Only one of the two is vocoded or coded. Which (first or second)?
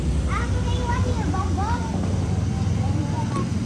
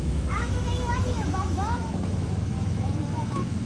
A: second